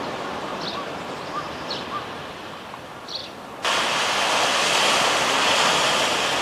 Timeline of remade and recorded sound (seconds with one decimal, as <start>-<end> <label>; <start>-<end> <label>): 0.0-6.4 recorded